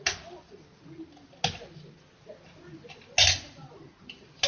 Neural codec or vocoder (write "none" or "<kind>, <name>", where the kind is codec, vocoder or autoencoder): none